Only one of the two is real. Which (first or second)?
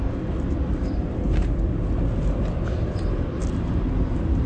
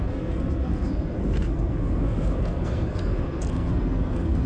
first